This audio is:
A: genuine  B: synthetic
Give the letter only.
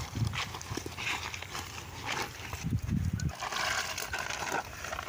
A